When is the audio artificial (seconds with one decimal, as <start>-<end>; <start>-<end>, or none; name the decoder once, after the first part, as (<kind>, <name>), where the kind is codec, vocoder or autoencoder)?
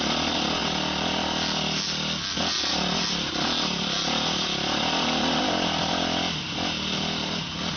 none